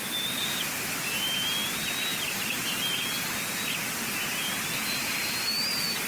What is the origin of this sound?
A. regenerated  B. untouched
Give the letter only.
B